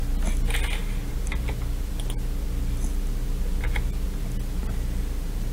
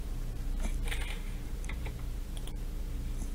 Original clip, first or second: first